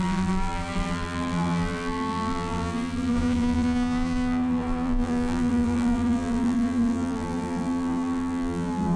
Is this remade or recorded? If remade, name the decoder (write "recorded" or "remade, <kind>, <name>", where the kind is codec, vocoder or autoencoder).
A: remade, vocoder, BigVGAN v2